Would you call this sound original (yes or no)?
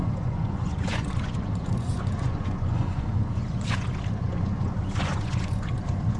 no